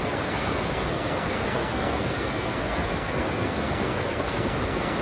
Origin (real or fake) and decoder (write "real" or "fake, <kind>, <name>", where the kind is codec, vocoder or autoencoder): fake, codec, SNAC